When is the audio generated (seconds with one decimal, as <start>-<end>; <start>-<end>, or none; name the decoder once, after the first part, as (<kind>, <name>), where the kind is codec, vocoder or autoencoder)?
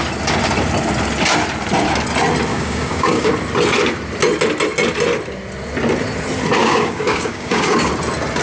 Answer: 2.5-3.3 (codec, DAC); 6.6-7.9